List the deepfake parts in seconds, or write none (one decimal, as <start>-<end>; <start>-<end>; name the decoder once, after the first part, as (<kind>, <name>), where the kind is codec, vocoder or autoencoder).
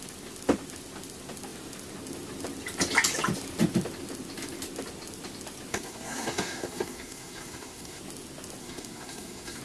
5.7-8.0 (codec, SNAC); 8.6-9.6